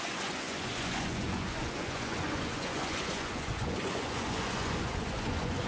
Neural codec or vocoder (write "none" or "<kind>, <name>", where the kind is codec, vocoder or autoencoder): vocoder, Vocos